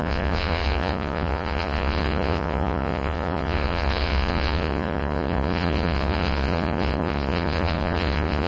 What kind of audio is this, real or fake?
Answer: fake